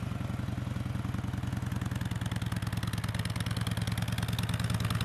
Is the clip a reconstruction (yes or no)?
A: no